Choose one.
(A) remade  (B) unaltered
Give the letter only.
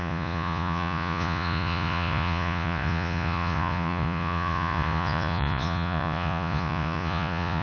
A